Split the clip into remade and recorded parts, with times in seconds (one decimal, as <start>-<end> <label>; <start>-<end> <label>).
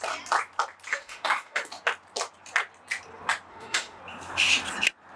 0.0-0.9 recorded; 0.9-1.7 remade; 1.7-3.5 recorded; 3.5-4.0 remade; 4.0-5.2 recorded